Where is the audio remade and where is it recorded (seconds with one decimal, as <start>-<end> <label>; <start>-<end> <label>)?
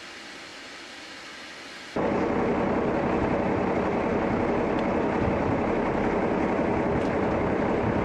0.0-8.0 recorded